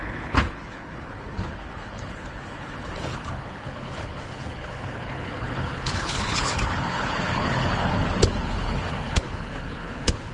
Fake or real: fake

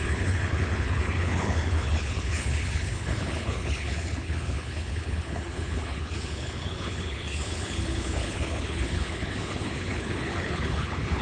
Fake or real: fake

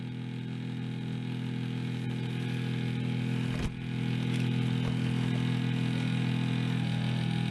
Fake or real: real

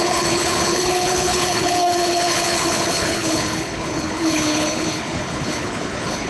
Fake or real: fake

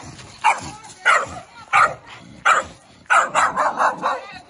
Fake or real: real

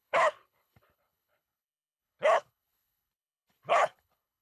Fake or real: fake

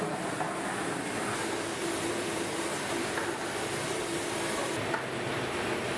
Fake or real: real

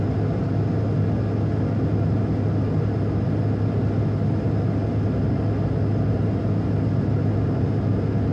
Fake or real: real